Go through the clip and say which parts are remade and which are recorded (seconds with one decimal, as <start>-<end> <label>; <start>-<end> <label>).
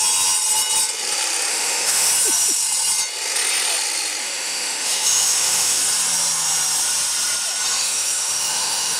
0.0-1.5 recorded; 1.5-2.1 remade; 2.1-4.2 recorded; 4.2-5.8 remade; 5.8-7.8 recorded; 7.8-9.0 remade